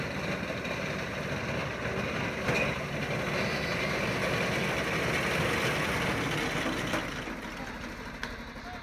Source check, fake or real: real